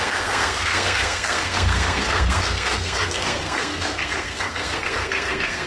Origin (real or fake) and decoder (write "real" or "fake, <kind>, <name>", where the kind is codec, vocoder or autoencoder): fake, codec, SNAC